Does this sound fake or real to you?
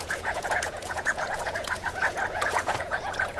fake